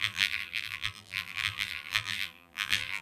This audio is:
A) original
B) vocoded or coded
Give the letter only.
B